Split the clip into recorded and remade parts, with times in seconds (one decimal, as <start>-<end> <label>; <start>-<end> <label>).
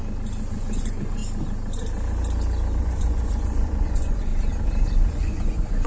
0.0-0.5 recorded; 0.5-1.2 remade; 1.2-2.8 recorded; 2.8-4.3 remade; 4.3-5.1 recorded; 5.1-5.9 remade